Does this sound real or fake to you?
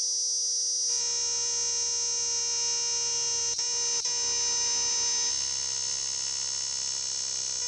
real